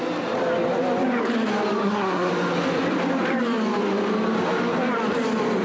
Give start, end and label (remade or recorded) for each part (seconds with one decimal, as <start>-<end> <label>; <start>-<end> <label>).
0.0-1.8 recorded; 1.8-2.3 remade; 2.3-5.6 recorded

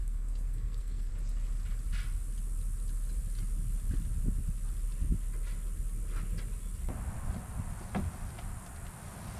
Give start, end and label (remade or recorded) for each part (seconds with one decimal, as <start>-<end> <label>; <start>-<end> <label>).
0.0-1.1 remade; 1.1-9.4 recorded

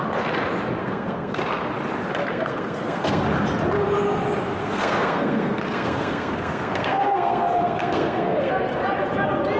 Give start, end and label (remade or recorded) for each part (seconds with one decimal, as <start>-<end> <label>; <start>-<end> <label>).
0.0-0.8 recorded; 0.8-1.4 remade; 1.4-2.3 recorded; 2.3-3.2 remade; 3.2-4.6 recorded; 4.6-8.5 remade; 8.5-9.6 recorded

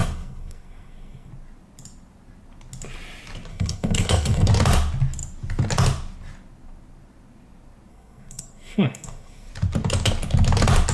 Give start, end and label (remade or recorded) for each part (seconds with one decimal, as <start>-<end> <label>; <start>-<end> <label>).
0.0-1.3 remade; 1.3-3.5 recorded; 3.5-4.5 remade; 4.5-7.9 recorded; 7.9-9.5 remade; 9.5-10.9 recorded

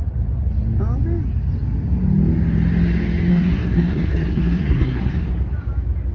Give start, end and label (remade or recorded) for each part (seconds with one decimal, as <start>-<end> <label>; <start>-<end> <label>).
0.0-3.3 recorded; 3.3-5.3 remade; 5.3-6.1 recorded

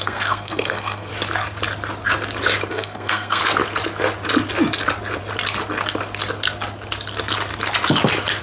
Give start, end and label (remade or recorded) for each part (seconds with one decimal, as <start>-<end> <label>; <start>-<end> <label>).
0.0-1.1 remade; 1.1-2.7 recorded; 2.7-3.4 remade; 3.4-8.4 recorded

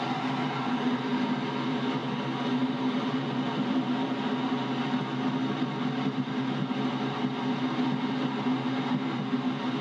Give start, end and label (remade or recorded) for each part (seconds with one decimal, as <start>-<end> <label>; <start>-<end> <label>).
0.0-9.8 recorded